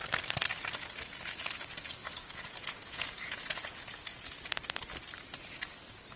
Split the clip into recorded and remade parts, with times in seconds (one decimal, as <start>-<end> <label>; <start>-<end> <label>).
0.0-2.0 recorded; 2.0-4.4 remade; 4.4-6.2 recorded